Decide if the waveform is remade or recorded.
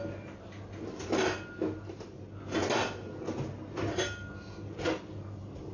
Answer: recorded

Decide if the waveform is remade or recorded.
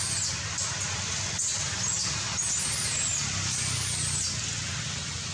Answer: recorded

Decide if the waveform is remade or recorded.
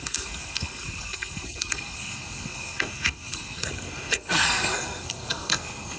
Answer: remade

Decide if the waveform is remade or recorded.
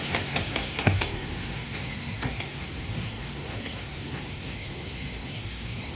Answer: remade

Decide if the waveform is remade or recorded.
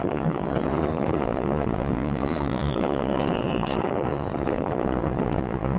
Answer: remade